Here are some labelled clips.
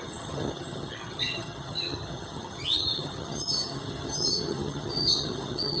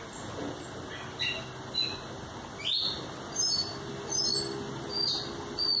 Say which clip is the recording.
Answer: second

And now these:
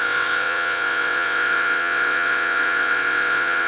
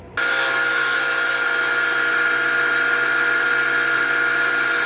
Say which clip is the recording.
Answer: second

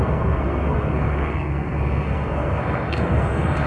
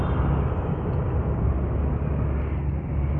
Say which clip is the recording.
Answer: second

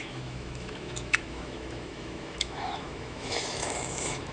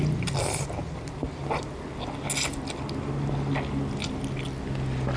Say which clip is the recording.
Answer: second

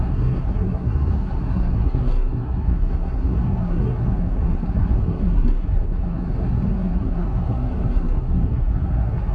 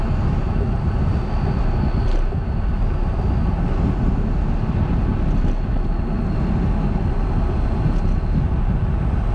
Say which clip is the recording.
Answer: second